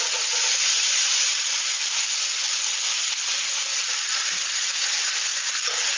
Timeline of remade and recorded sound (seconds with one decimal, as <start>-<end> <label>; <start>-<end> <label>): 0.0-6.0 recorded